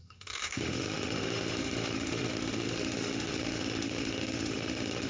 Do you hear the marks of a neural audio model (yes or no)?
yes